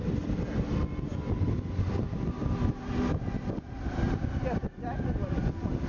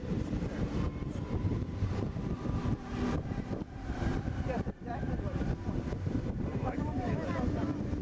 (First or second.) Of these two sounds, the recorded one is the first